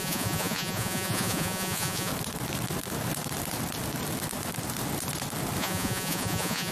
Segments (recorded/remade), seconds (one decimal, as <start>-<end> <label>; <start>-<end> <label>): 0.0-2.1 remade; 2.1-5.6 recorded; 5.6-6.7 remade